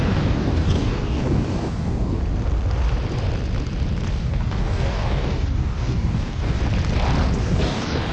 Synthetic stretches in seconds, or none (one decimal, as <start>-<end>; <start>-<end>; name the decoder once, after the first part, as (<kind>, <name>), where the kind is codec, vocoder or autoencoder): 0.0-2.2 (codec, DAC); 4.1-6.6; 7.4-8.1

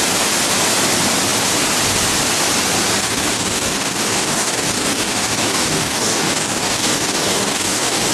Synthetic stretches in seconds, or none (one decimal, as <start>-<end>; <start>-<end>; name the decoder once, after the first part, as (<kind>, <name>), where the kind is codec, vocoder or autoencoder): 3.0-8.1 (codec, DAC)